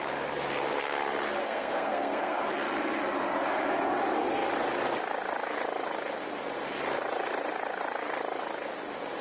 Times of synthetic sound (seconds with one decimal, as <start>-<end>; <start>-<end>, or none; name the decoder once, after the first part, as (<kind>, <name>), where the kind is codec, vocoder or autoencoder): 1.4-2.4 (codec, SNAC)